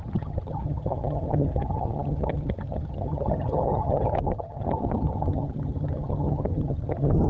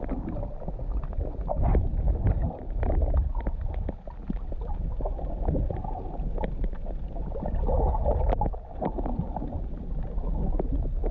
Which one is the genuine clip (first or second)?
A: second